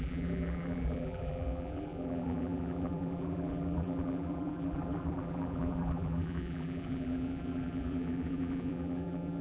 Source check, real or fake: fake